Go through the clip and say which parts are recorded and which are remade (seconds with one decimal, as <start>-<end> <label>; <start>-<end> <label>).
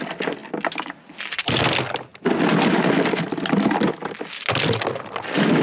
0.0-5.6 recorded